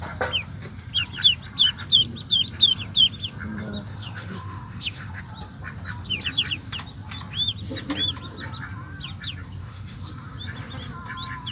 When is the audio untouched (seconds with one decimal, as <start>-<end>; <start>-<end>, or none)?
0.0-3.9; 5.2-9.6; 10.1-11.5